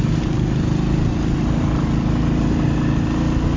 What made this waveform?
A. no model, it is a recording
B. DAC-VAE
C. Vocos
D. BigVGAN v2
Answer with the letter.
A